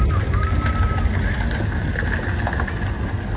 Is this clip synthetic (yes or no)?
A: no